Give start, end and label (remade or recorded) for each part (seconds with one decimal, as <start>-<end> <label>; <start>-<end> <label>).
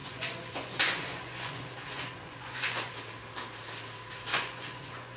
0.0-2.9 remade; 2.9-4.3 recorded; 4.3-5.2 remade